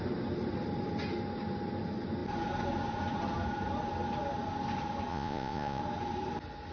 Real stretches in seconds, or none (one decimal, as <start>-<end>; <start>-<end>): 0.0-5.1; 5.8-6.7